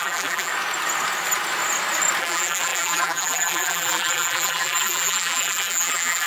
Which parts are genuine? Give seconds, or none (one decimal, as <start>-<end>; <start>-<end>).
0.5-2.2